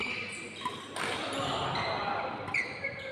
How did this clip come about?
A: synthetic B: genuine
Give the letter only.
B